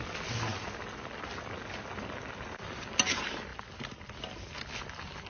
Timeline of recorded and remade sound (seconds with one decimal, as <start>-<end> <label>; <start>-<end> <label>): 0.0-5.3 recorded